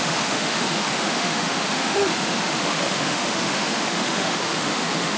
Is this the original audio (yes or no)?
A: no